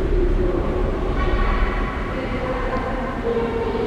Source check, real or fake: fake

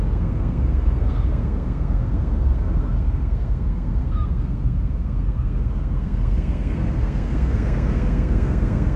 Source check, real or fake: fake